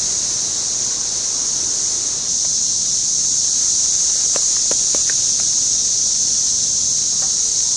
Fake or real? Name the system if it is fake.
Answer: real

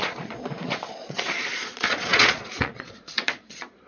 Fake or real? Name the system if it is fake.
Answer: fake, vocoder, Vocos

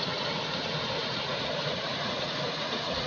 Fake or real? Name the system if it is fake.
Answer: fake, vocoder, Vocos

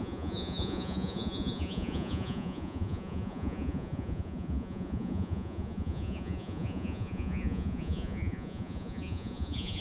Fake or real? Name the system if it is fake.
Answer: fake, vocoder, Vocos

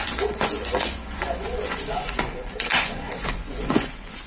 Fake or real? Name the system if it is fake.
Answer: fake, vocoder, Vocos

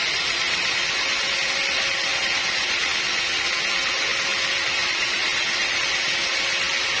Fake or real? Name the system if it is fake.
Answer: real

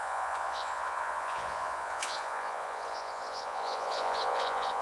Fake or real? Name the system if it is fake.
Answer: fake, vocoder, Vocos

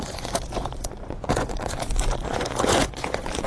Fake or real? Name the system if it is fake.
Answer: fake, vocoder, Vocos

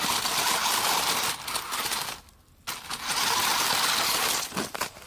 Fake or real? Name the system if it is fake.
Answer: real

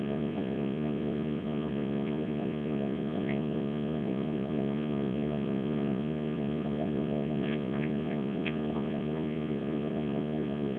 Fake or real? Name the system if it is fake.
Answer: fake, vocoder, Vocos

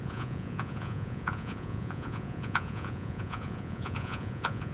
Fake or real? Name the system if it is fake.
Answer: fake, vocoder, Vocos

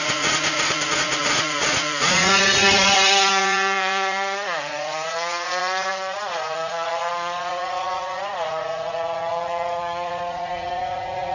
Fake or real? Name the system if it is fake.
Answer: fake, vocoder, Vocos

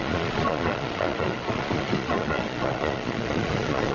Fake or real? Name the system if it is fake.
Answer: fake, vocoder, Vocos